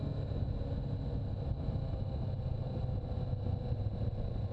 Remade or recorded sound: recorded